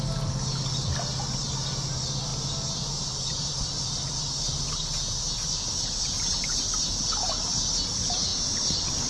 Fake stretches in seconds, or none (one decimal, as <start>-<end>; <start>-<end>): none